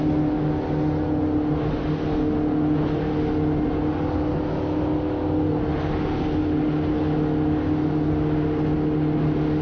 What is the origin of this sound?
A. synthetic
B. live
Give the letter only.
B